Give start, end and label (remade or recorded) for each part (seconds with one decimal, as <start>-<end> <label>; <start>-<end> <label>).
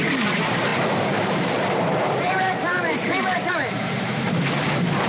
0.0-5.1 remade